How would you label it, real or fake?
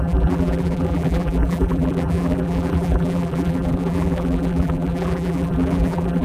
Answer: fake